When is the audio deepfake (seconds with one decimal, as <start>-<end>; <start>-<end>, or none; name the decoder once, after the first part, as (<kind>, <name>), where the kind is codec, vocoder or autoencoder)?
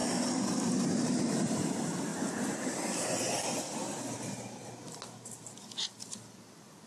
none